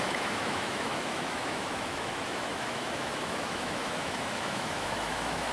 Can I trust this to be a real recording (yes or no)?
no